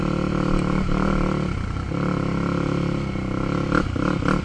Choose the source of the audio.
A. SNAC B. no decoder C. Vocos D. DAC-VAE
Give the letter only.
B